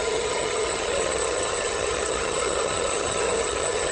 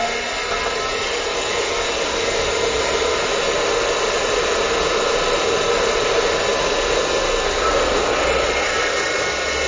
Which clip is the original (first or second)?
second